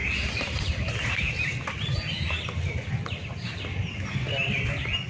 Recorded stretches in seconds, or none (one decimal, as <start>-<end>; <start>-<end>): 1.2-5.1